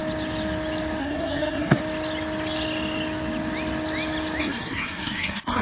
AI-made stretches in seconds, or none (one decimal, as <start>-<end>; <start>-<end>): 1.0-1.8; 4.4-5.6